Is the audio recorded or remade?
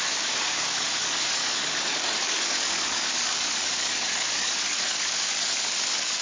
remade